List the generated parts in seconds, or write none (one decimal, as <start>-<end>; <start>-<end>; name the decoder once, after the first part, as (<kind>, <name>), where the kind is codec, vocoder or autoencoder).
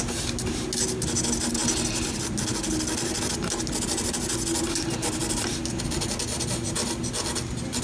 none